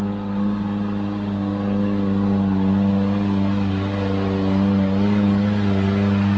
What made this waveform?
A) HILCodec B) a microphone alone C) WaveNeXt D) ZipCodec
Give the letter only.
B